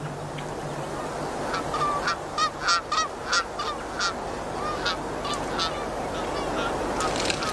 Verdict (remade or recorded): recorded